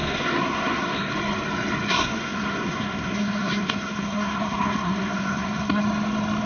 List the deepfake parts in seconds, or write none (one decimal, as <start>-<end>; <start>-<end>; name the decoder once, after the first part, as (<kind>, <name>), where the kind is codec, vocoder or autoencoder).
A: 0.0-1.1 (codec, SNAC); 1.9-5.8